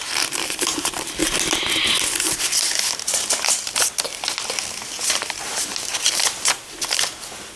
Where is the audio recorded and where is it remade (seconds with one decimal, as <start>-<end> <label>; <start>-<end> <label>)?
0.0-1.2 remade; 1.2-5.1 recorded; 5.1-5.9 remade; 5.9-7.6 recorded